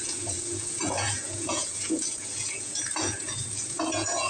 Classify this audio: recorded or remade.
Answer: remade